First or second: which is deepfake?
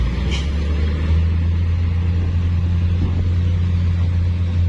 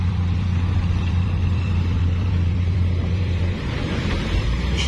second